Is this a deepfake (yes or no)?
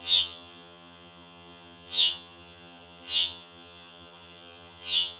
yes